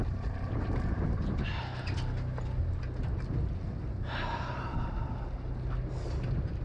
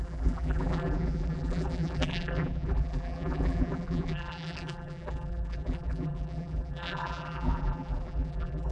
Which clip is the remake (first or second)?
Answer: second